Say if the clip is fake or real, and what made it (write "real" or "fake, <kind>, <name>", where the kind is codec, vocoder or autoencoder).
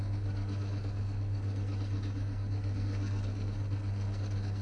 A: fake, codec, SNAC